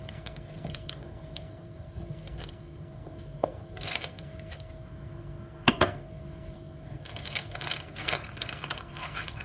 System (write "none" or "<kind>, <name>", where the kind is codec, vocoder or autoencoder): codec, SNAC